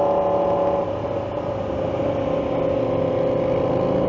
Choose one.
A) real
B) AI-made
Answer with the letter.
A